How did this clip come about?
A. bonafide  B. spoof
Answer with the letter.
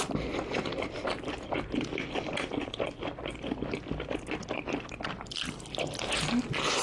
A